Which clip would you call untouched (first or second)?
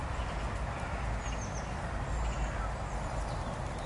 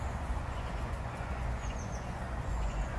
first